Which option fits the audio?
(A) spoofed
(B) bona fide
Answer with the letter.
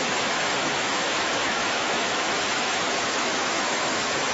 A